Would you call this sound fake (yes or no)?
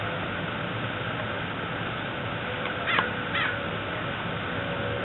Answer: no